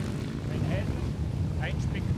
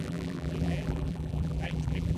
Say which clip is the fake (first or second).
second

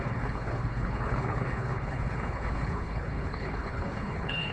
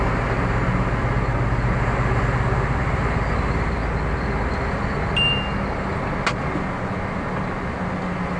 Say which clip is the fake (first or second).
first